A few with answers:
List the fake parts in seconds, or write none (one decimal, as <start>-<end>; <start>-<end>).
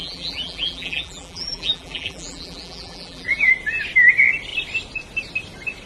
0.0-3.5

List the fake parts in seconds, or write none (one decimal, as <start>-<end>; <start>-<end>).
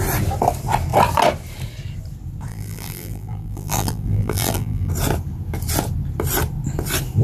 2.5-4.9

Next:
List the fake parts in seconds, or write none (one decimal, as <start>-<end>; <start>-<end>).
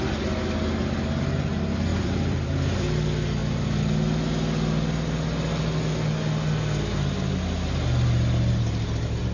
1.9-2.5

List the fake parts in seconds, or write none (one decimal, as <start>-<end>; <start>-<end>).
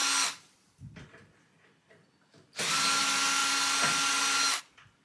none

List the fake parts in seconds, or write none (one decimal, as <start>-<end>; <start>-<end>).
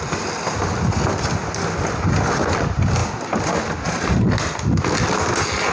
none